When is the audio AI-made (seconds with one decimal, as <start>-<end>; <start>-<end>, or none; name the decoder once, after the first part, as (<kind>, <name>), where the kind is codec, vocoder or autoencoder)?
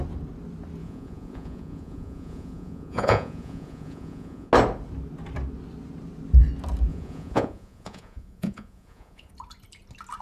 0.8-4.5 (vocoder, Vocos); 6.9-9.3